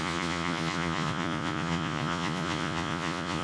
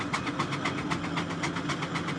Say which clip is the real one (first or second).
second